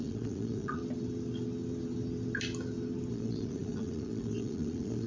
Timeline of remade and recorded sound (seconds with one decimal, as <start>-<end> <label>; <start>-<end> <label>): 0.0-0.8 remade; 0.8-3.1 recorded; 3.1-5.1 remade